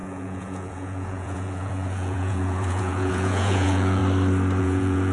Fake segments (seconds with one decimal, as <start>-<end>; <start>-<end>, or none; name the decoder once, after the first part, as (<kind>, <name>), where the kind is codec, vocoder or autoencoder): 0.0-4.0 (vocoder, Vocos); 4.6-5.1